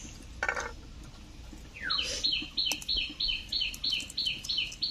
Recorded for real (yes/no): yes